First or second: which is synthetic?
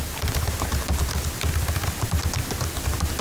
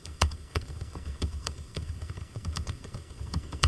second